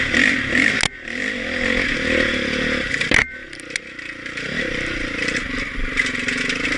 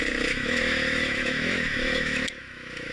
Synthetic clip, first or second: second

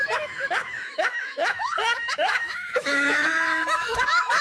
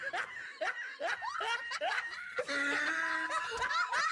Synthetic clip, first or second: first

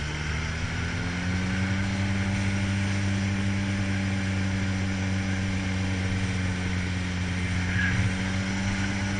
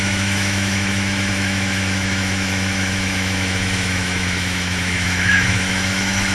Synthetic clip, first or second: second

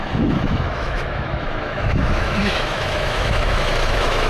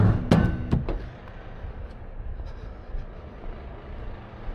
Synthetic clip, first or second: first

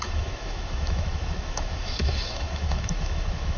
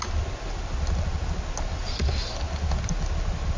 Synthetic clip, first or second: first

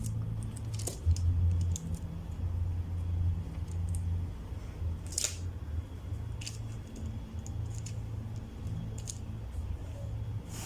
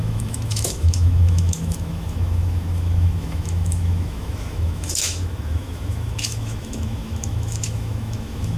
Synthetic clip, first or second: second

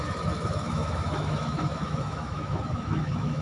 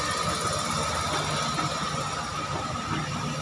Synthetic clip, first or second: first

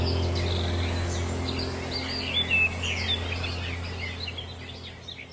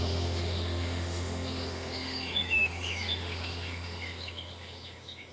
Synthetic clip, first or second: second